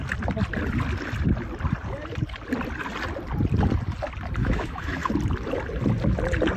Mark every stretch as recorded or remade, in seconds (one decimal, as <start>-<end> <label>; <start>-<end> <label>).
0.0-4.4 recorded; 4.4-5.1 remade; 5.1-6.6 recorded